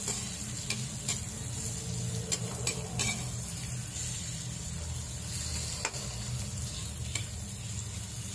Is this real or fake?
real